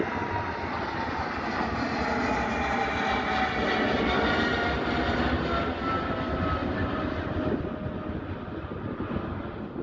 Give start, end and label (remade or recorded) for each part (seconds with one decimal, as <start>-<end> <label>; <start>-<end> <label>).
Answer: 0.0-9.8 recorded